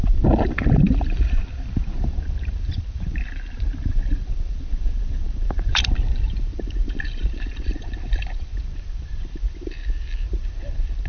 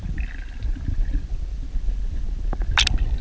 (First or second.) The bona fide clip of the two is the second